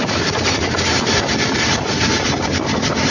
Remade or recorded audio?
recorded